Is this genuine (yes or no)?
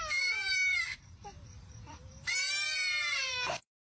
no